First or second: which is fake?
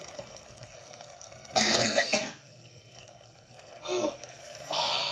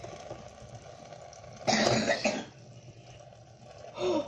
first